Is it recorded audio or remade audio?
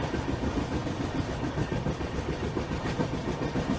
recorded